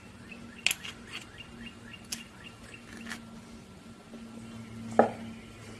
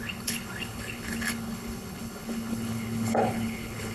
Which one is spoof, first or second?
second